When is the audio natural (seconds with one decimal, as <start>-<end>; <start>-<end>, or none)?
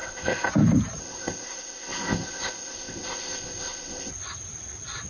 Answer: 0.5-1.0; 4.1-5.1